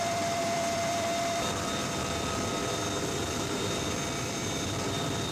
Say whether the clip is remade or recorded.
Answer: remade